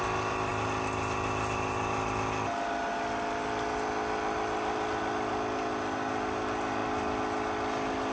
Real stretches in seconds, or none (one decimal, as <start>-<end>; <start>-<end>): 0.0-8.1